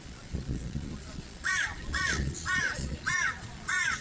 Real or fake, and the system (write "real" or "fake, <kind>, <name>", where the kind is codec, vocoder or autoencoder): fake, vocoder, Vocos